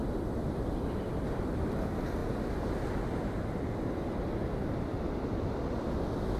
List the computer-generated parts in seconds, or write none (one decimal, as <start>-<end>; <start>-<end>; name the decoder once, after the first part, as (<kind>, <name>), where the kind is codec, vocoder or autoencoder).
0.0-2.2 (vocoder, BigVGAN v2); 4.7-6.4

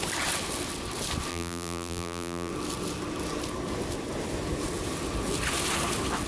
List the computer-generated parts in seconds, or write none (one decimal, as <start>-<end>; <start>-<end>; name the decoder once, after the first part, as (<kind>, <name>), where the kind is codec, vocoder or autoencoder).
1.3-2.5 (vocoder, BigVGAN v2)

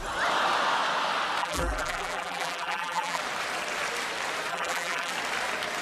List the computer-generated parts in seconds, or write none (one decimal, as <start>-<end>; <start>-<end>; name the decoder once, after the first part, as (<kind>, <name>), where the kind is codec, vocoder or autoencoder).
1.4-3.2 (vocoder, BigVGAN v2); 4.5-5.1

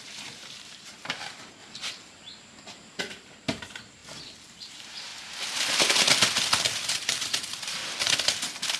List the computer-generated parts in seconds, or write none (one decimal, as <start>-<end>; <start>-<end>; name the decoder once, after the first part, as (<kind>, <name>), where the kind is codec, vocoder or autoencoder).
0.0-1.6 (vocoder, BigVGAN v2); 3.0-4.0; 4.6-5.1; 6.6-7.8

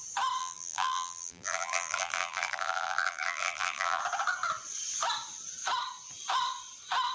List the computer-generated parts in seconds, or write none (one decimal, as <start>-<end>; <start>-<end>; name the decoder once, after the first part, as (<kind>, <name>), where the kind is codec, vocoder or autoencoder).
0.4-4.0 (vocoder, BigVGAN v2)

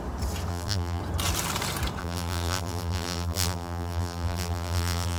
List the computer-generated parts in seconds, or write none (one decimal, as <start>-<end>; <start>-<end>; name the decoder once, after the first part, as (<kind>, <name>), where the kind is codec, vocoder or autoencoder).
0.5-1.0 (vocoder, BigVGAN v2); 2.0-5.2

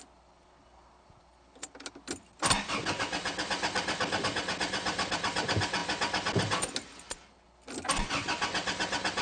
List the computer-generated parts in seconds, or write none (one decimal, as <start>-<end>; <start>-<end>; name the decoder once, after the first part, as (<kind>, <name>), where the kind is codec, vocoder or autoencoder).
none

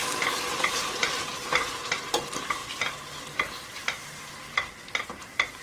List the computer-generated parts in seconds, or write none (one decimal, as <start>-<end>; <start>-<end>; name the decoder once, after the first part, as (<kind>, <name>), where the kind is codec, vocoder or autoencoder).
0.5-2.6 (vocoder, BigVGAN v2); 3.7-4.4; 5.0-5.6